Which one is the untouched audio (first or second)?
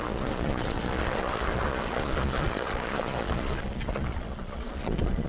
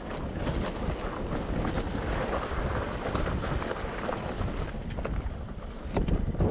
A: second